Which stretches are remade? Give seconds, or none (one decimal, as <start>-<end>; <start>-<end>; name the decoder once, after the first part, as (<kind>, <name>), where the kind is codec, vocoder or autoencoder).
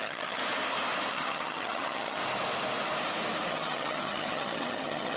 0.0-0.4 (vocoder, HiFi-GAN); 1.1-2.2; 3.5-5.2